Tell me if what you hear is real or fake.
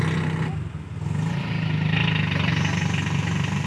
real